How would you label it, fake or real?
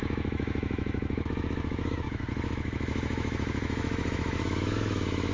fake